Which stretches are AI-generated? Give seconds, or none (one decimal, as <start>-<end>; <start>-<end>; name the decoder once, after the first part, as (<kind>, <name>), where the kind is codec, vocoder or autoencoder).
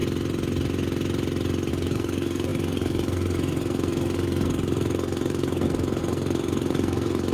1.7-7.3 (codec, SNAC)